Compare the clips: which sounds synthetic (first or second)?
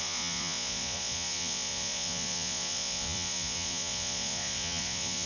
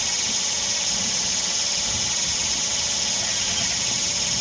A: first